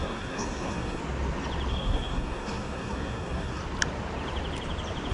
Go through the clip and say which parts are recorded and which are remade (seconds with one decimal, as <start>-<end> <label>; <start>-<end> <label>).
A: 0.0-1.0 remade; 1.0-1.7 recorded; 1.7-3.6 remade; 3.6-5.1 recorded